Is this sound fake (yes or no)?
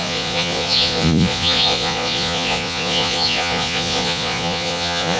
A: yes